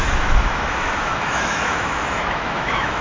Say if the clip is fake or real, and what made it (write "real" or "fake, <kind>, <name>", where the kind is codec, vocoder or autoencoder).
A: fake, autoencoder, DAC-VAE